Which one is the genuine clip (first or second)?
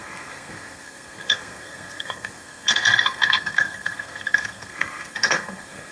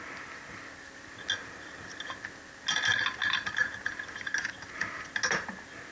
second